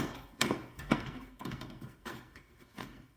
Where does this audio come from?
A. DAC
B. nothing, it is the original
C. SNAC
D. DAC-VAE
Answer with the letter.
C